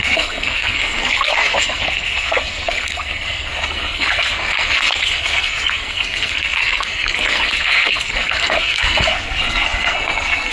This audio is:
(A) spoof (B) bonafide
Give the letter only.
A